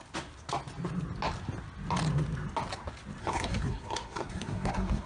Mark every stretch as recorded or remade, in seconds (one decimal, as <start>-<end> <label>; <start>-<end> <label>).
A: 0.0-3.2 recorded; 3.2-5.1 remade